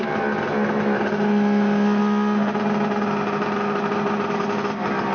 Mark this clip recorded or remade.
recorded